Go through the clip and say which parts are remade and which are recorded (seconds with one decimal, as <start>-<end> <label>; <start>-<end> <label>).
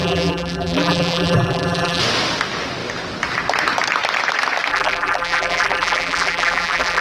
0.0-2.0 remade; 2.0-4.7 recorded; 4.7-7.0 remade